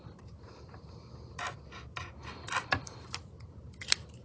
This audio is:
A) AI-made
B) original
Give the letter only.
B